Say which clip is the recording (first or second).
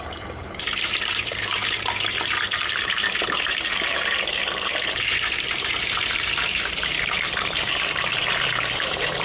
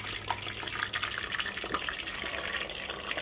second